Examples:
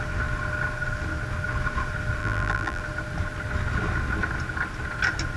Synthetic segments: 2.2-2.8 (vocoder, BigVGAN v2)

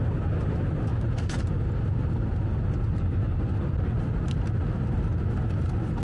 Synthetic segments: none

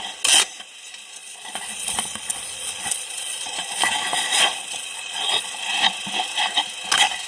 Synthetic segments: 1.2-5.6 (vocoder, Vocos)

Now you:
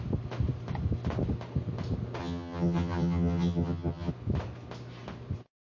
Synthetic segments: 2.2-4.1 (vocoder, HiFi-GAN)

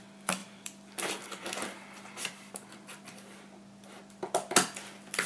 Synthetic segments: 0.4-3.6 (vocoder, BigVGAN v2)

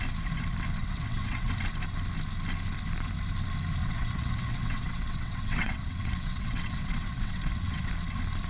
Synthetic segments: 0.8-1.5 (vocoder, WaveNeXt); 3.8-7.9

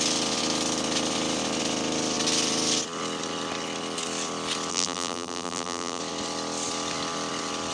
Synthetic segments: 4.7-6.0 (vocoder, BigVGAN v2)